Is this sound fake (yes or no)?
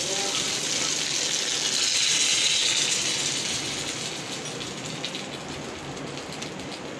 no